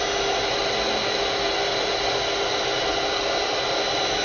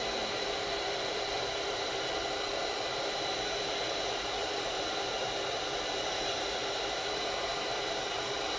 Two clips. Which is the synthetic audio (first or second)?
second